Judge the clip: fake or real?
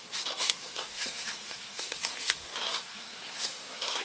fake